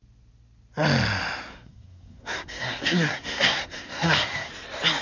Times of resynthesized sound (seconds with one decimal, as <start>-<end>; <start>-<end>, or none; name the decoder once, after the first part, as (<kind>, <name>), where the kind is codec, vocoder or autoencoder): 1.5-4.5 (codec, SNAC)